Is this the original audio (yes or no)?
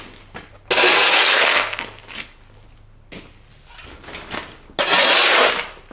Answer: yes